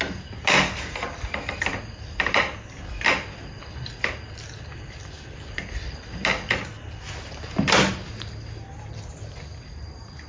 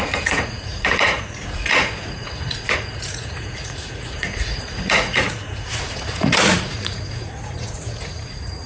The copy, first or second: second